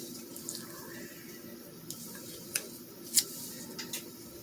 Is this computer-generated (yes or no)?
no